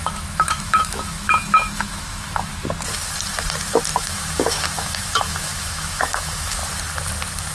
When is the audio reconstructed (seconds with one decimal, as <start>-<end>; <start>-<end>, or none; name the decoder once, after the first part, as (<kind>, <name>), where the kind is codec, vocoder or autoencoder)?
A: 0.0-2.5 (autoencoder, DAC-VAE); 4.0-6.6